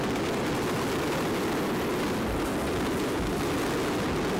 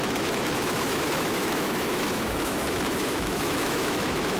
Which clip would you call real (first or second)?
first